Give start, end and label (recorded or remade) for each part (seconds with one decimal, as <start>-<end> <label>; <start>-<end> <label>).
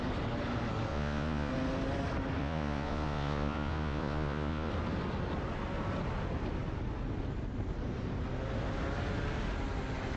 0.0-0.9 recorded; 0.9-1.5 remade; 1.5-2.4 recorded; 2.4-4.7 remade; 4.7-10.2 recorded